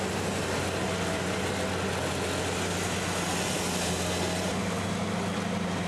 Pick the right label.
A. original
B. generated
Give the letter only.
A